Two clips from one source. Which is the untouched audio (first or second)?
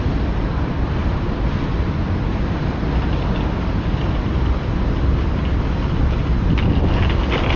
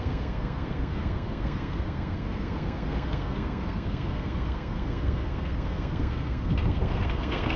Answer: first